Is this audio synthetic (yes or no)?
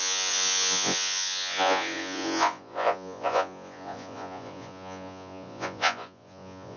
yes